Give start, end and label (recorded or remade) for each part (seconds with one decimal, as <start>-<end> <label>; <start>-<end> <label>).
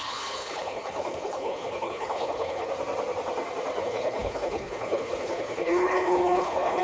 0.0-2.7 remade; 2.7-3.8 recorded; 3.8-6.8 remade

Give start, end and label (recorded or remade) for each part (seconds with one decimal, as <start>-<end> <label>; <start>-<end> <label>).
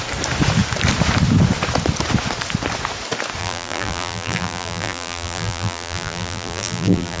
0.0-3.4 recorded; 3.4-7.2 remade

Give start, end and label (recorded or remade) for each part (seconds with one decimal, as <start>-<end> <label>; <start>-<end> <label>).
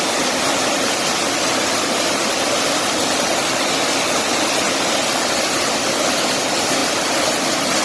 0.0-7.8 recorded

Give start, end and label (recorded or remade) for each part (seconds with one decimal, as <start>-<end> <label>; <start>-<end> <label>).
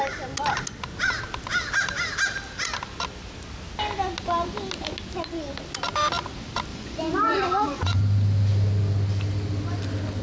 0.0-6.7 recorded; 6.7-8.0 remade; 8.0-10.2 recorded